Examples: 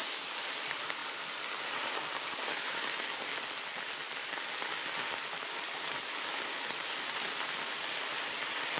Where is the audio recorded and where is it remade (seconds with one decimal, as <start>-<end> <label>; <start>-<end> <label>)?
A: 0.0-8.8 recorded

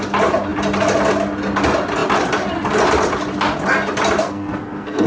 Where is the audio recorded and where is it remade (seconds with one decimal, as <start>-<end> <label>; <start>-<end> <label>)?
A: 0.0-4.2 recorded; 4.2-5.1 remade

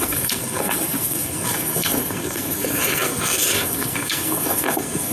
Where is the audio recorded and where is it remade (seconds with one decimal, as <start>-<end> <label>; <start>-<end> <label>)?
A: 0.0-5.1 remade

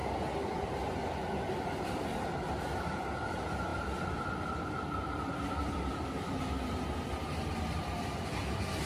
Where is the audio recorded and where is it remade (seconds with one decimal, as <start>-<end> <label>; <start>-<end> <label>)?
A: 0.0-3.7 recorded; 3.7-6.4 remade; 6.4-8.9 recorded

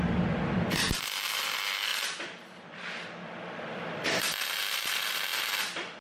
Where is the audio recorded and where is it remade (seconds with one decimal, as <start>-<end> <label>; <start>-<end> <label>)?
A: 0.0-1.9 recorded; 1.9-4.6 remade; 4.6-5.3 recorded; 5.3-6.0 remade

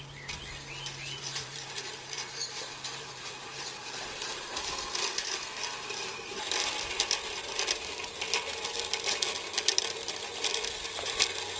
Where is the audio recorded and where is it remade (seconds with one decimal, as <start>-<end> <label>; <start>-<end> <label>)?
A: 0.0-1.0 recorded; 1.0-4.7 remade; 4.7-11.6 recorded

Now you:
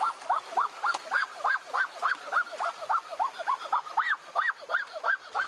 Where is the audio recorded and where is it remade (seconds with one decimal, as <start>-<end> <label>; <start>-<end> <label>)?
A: 0.0-5.5 recorded

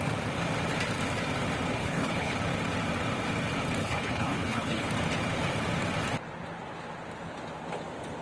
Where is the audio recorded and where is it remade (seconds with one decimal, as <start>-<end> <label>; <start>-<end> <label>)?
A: 0.0-1.8 recorded; 1.8-2.3 remade; 2.3-3.8 recorded; 3.8-4.9 remade; 4.9-8.2 recorded